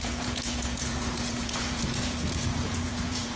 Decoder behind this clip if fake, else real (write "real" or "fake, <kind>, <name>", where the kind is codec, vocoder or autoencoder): fake, vocoder, Vocos